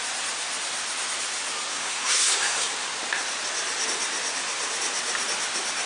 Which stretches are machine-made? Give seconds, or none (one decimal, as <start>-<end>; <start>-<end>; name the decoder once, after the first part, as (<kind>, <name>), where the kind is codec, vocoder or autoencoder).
1.7-2.7 (codec, SNAC)